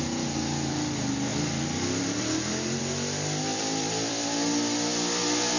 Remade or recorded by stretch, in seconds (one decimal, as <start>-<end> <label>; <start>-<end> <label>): 0.0-1.3 recorded; 1.3-2.8 remade; 2.8-3.5 recorded; 3.5-4.2 remade; 4.2-5.6 recorded